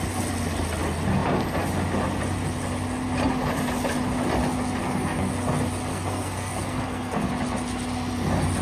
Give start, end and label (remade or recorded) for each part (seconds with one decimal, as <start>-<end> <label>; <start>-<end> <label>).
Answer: 0.0-4.8 recorded; 4.8-5.3 remade; 5.3-5.9 recorded; 5.9-7.3 remade; 7.3-8.6 recorded